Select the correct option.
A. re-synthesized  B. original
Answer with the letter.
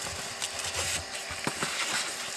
B